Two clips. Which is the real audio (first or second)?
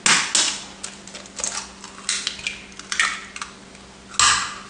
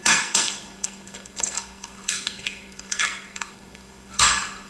first